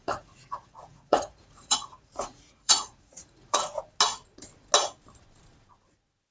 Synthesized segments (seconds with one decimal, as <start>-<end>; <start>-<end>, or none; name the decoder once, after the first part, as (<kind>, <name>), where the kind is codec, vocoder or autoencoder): 0.0-3.8 (vocoder, Vocos)